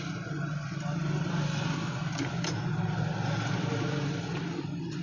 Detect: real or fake real